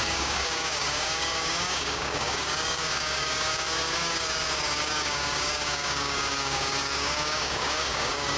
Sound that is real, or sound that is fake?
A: fake